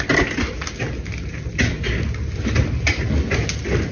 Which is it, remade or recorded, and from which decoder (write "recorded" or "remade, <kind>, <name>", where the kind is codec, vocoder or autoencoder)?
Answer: recorded